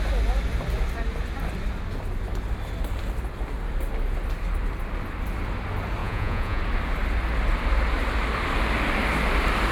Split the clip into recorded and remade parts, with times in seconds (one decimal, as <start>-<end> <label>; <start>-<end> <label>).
0.0-6.0 recorded; 6.0-6.6 remade; 6.6-9.7 recorded